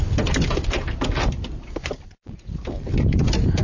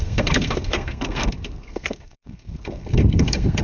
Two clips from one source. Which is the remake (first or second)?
second